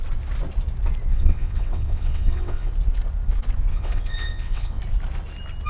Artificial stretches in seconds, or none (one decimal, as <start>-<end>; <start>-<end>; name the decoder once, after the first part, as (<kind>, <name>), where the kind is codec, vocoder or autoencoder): 1.1-2.7 (vocoder, WaveNeXt); 3.7-4.8